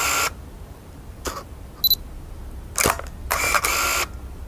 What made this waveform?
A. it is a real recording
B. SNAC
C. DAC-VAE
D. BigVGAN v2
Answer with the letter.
A